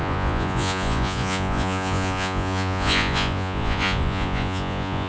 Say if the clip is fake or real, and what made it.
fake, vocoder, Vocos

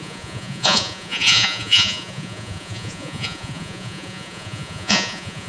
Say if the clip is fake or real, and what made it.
fake, vocoder, Vocos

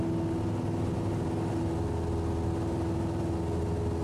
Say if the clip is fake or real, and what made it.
real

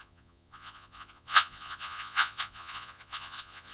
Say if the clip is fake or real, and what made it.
fake, vocoder, Vocos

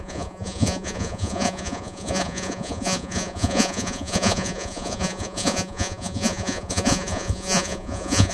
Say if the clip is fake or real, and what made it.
fake, vocoder, Vocos